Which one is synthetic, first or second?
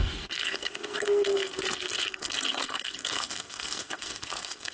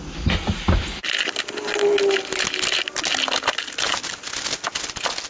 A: first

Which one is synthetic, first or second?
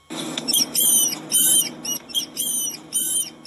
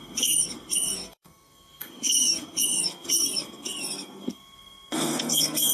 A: second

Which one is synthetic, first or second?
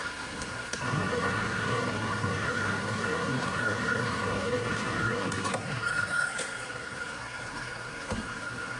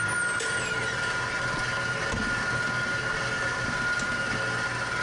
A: first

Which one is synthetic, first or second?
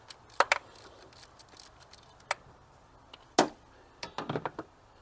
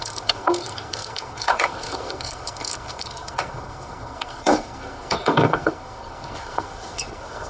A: second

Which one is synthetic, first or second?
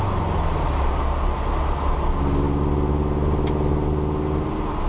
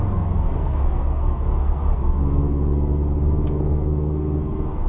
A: second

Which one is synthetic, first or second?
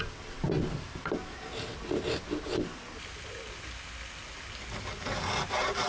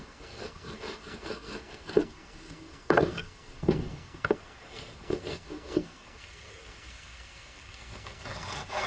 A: second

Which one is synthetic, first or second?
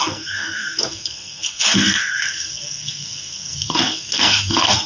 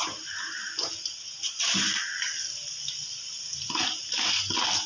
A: first